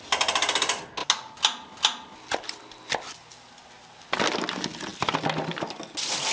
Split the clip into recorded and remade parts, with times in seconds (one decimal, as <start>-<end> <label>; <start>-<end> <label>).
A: 0.0-6.3 recorded